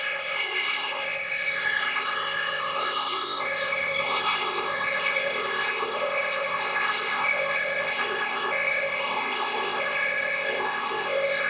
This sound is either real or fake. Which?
fake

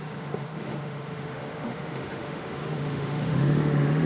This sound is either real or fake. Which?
fake